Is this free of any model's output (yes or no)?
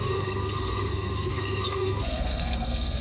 no